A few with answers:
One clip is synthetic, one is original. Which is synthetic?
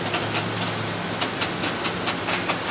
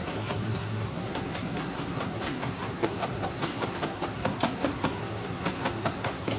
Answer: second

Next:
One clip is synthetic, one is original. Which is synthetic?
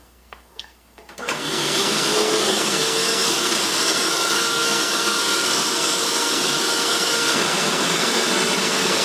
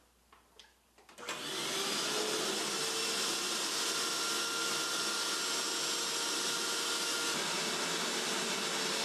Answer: first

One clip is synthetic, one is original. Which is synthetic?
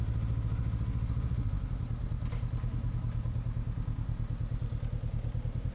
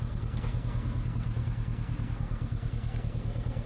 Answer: second